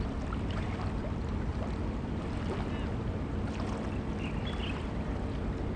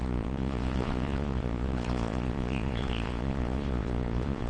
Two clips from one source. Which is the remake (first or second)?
second